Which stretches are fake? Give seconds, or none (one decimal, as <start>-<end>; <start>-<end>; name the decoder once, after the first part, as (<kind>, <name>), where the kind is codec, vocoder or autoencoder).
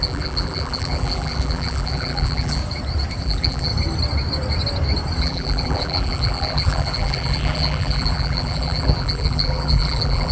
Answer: 0.0-2.6 (vocoder, BigVGAN v2); 3.2-3.7; 5.2-10.3